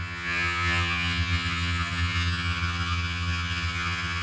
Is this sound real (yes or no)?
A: no